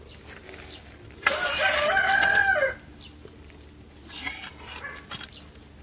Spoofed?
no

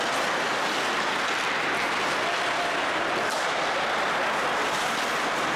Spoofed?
no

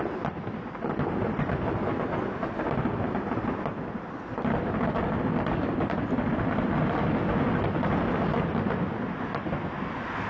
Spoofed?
no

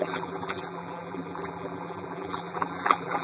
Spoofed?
yes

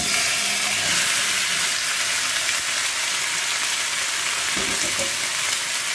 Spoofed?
no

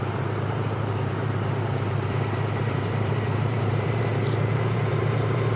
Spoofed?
yes